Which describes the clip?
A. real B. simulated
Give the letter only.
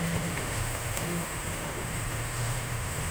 B